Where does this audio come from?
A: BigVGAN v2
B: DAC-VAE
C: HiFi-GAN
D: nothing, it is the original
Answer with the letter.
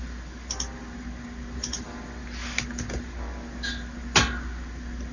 D